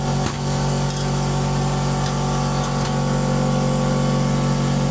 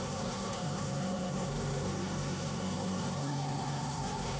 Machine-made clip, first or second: second